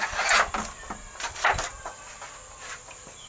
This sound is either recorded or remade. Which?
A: recorded